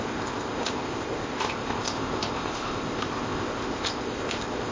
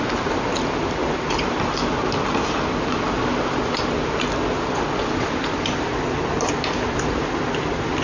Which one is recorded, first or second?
second